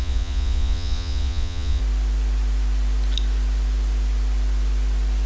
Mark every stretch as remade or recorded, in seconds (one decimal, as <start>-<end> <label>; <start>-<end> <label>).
0.0-1.8 remade; 1.8-5.3 recorded